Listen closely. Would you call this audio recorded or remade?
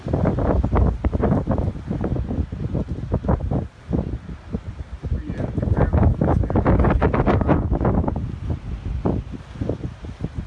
recorded